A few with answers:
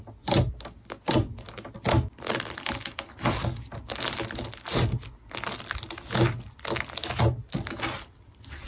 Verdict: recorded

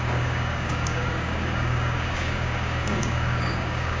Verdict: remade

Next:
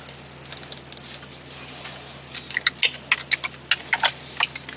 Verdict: recorded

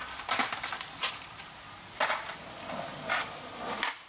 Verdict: recorded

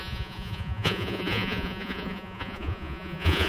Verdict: remade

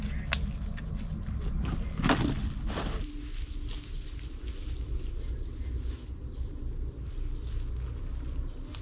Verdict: recorded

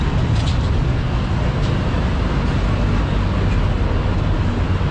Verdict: recorded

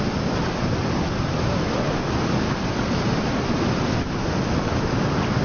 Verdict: recorded